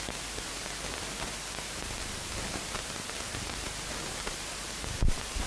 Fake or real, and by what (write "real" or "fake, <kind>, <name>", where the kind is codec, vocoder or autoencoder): real